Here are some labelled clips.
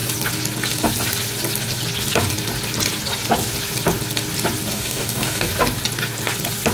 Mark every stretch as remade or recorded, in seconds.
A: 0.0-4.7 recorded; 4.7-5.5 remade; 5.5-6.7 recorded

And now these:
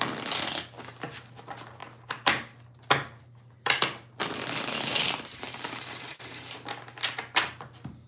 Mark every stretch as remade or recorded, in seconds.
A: 0.0-4.9 recorded; 4.9-6.1 remade; 6.1-8.1 recorded

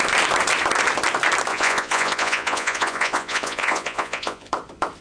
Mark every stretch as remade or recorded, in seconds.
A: 0.0-1.5 recorded; 1.5-4.5 remade; 4.5-5.0 recorded

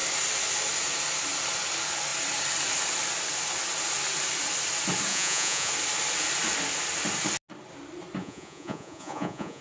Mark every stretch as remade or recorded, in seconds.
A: 0.0-5.1 recorded; 5.1-5.7 remade; 5.7-8.2 recorded; 8.2-9.6 remade

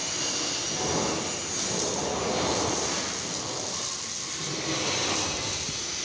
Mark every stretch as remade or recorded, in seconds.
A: 0.0-6.0 recorded

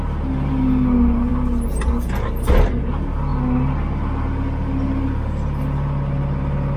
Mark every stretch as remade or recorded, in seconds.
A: 0.0-6.8 recorded